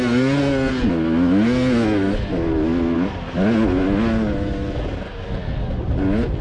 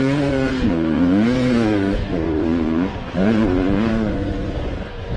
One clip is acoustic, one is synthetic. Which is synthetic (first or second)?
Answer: second